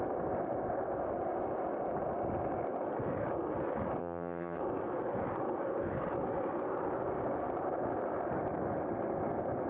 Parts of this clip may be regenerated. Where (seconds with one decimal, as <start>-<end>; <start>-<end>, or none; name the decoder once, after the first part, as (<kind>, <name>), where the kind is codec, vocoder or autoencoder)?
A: 4.0-4.6 (vocoder, HiFi-GAN)